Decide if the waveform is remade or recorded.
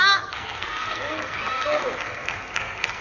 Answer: remade